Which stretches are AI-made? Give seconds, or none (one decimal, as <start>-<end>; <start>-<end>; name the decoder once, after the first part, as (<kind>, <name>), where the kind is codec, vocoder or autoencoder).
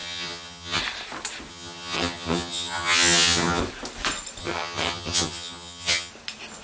0.0-0.8 (vocoder, HiFi-GAN); 1.5-3.6; 4.4-6.1